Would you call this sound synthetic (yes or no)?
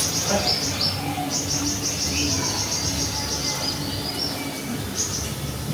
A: no